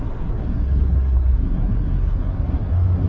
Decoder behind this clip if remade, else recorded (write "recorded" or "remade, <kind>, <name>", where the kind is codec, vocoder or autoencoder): remade, codec, SNAC